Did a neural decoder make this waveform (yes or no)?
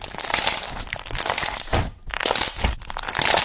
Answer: no